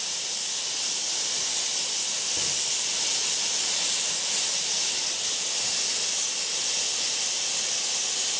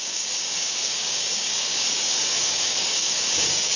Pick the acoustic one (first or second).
first